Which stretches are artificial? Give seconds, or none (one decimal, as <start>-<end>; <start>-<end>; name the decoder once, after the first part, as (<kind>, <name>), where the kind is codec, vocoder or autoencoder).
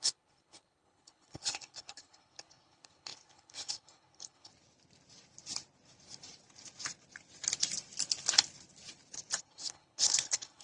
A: 0.0-4.5 (codec, HILCodec); 9.4-10.6